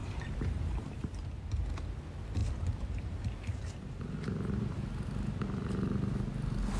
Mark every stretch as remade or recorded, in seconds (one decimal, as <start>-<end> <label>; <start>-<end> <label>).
0.0-1.5 remade; 1.5-2.4 recorded; 2.4-4.0 remade; 4.0-6.8 recorded